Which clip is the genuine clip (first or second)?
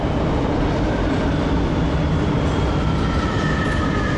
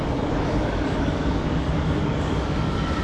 first